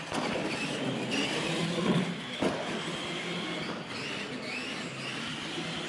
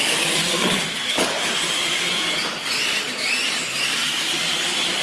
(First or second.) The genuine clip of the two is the first